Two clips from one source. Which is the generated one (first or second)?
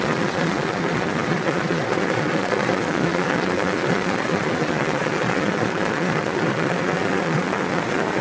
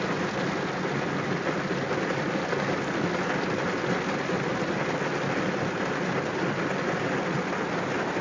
first